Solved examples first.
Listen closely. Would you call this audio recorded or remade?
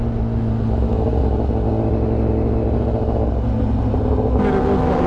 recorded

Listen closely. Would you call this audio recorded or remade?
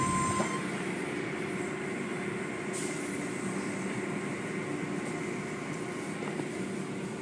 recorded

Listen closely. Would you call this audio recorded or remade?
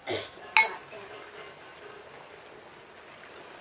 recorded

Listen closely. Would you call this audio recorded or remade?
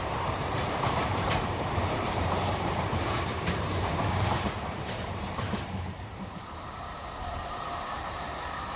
remade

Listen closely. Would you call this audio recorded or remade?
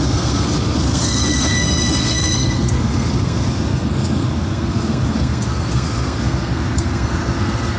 remade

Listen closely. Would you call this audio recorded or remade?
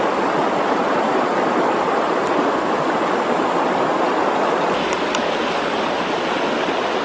recorded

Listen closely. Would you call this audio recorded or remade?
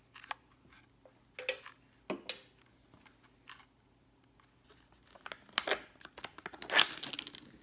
recorded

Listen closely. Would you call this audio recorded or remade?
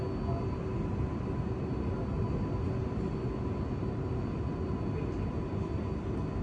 recorded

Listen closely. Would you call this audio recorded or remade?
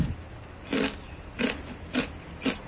recorded